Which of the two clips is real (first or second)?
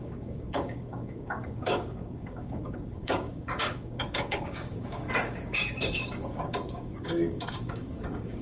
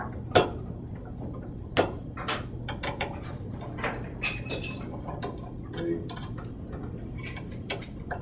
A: second